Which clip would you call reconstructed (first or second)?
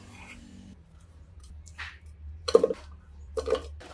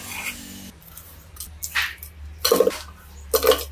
first